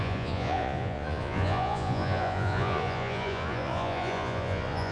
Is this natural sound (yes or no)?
no